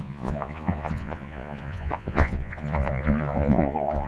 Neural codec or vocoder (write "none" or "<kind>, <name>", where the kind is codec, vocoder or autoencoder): vocoder, Vocos